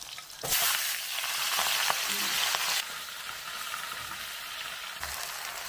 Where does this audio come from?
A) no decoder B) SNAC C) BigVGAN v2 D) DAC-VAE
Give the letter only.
A